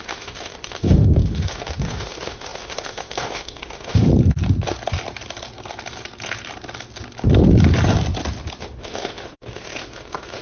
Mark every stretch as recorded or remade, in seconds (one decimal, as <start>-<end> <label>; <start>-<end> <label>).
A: 0.0-4.1 remade; 4.1-8.6 recorded; 8.6-10.4 remade